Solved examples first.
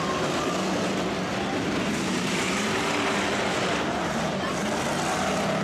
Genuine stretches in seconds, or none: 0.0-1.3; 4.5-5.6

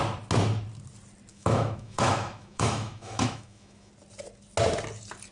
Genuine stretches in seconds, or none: 0.0-1.3; 3.9-5.3

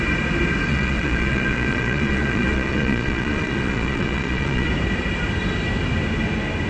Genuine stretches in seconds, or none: 0.0-0.7; 4.7-6.7

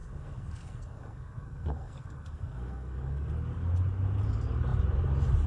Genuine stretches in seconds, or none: 3.3-5.5

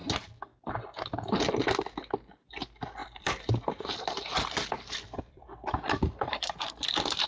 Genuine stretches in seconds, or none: 0.0-3.0; 6.7-7.3

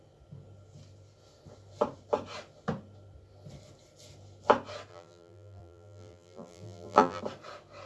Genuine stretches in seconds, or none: 0.0-4.9; 7.2-7.9